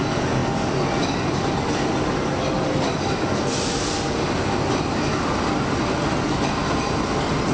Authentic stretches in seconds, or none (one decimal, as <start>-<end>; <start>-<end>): 0.4-4.9